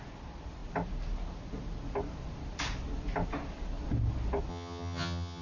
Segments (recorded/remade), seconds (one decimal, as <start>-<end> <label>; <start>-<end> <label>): 0.0-4.5 recorded; 4.5-5.4 remade